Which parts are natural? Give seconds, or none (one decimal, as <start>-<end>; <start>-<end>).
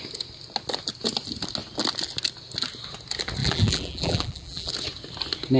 0.0-3.4; 4.7-5.6